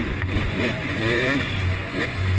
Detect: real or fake fake